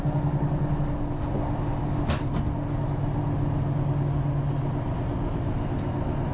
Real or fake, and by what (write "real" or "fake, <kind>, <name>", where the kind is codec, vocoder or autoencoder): real